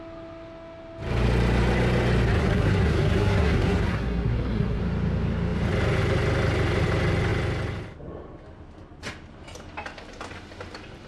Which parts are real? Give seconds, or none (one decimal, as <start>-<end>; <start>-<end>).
0.0-2.4; 4.8-11.1